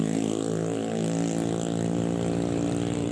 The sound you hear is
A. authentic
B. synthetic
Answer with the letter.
A